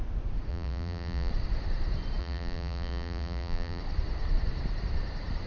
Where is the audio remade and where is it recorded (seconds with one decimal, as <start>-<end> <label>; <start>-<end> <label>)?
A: 0.0-0.5 recorded; 0.5-1.3 remade; 1.3-2.2 recorded; 2.2-3.8 remade; 3.8-5.5 recorded